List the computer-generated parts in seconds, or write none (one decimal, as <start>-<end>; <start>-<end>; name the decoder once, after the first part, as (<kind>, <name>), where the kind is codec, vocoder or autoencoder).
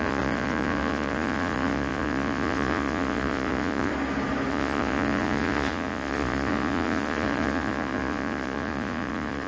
0.0-3.9 (vocoder, Vocos); 4.5-9.5